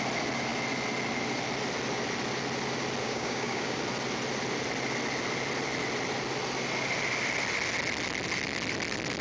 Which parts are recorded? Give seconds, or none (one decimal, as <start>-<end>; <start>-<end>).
0.0-3.0; 3.8-9.2